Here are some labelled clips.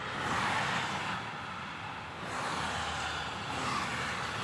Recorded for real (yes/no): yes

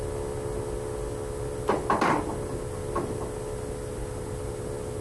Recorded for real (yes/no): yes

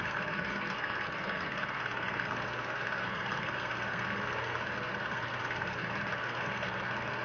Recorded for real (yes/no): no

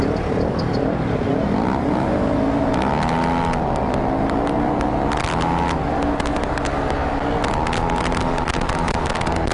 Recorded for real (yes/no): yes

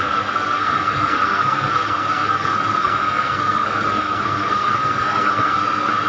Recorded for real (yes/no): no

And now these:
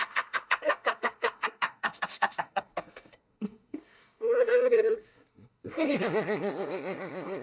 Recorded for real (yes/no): no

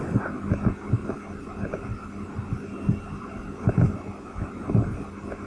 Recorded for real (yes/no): yes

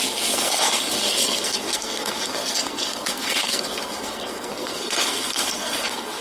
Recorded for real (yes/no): no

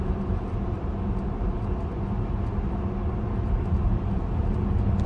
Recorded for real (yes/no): yes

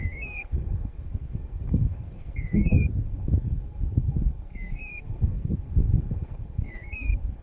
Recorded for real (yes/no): no